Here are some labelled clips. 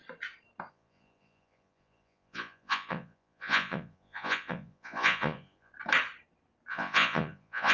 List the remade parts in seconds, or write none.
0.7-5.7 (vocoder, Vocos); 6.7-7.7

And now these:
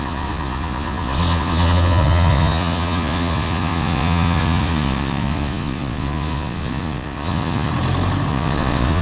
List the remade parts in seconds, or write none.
0.0-7.7 (vocoder, Vocos); 8.3-9.0

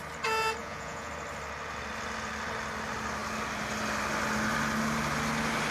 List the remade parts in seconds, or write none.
0.6-1.1 (vocoder, Vocos)